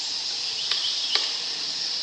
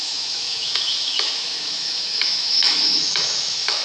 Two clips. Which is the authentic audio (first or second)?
first